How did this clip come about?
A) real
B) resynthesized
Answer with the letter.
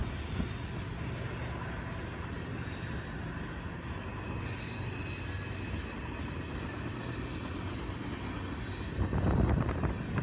A